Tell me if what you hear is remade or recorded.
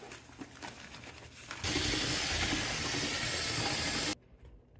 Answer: recorded